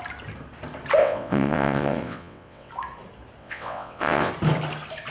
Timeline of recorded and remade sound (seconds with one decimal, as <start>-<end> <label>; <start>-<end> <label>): 0.0-1.0 recorded; 1.0-2.7 remade; 2.7-3.4 recorded; 3.4-4.3 remade; 4.3-5.1 recorded